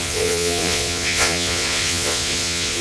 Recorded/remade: remade